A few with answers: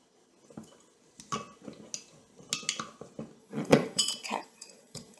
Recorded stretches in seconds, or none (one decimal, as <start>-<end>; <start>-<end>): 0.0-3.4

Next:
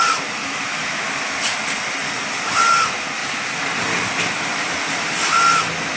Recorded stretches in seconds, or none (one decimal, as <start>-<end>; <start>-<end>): 0.0-0.4; 1.1-6.0

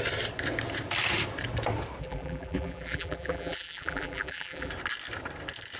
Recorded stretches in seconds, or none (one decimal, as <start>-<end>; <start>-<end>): 0.0-2.0; 4.7-5.8